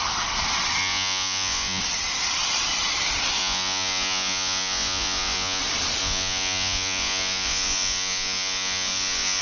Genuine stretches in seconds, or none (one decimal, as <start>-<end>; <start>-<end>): 0.0-0.8; 1.8-3.4; 5.6-6.0